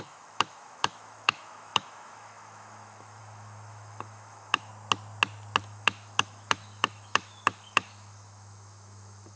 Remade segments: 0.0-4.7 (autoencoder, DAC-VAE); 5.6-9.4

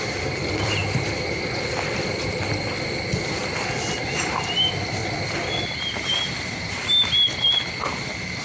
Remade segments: 0.0-0.8 (vocoder, BigVGAN v2); 4.0-5.0; 7.9-8.4

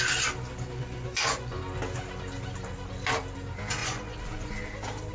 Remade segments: 0.8-1.6 (vocoder, Vocos); 3.8-4.5

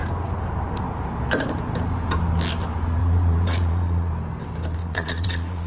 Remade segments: 3.0-4.1 (vocoder, Vocos); 4.8-5.7

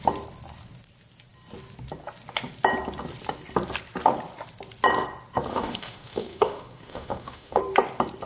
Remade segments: 5.5-7.6 (autoencoder, DAC-VAE)

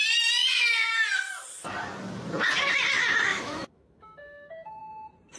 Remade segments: 3.3-4.8 (autoencoder, DAC-VAE)